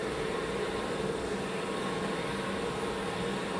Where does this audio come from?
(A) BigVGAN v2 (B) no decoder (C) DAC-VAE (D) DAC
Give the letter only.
B